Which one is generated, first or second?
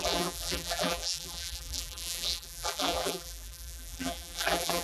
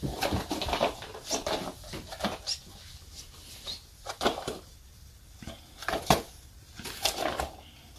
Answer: first